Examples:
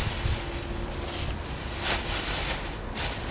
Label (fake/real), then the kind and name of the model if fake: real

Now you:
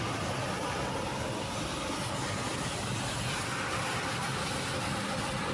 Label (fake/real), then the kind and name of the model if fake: real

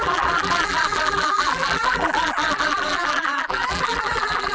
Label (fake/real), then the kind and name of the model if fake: fake, vocoder, BigVGAN v2